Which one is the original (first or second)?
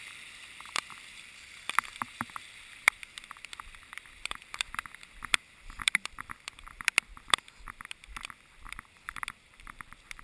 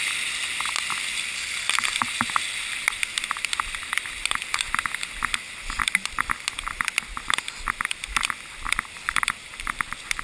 second